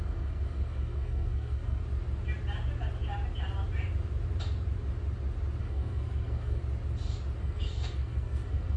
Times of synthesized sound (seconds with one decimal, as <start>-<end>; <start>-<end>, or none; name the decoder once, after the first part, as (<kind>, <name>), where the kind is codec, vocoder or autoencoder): 0.0-1.8 (codec, SNAC); 5.6-6.6; 7.4-8.8